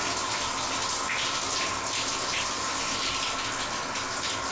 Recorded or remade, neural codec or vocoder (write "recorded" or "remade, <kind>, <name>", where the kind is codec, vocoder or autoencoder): recorded